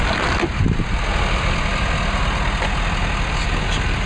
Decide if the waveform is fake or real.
real